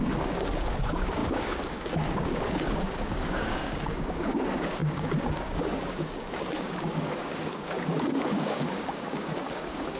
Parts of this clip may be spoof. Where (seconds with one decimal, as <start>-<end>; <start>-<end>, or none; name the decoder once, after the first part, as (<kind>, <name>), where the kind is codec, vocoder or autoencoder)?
0.0-10.0 (codec, DAC)